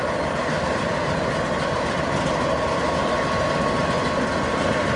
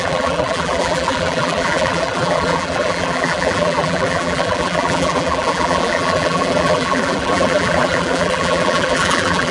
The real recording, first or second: first